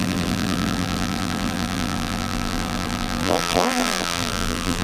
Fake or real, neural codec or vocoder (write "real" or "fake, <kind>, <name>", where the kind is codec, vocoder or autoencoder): fake, vocoder, BigVGAN v2